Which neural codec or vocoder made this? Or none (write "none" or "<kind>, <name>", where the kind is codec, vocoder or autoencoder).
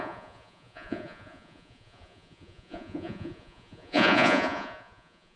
vocoder, Vocos